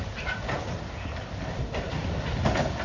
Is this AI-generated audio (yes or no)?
yes